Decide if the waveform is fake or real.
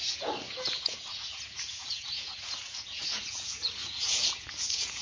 fake